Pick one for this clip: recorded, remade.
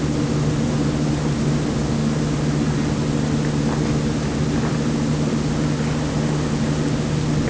recorded